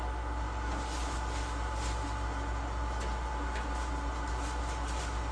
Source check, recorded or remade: recorded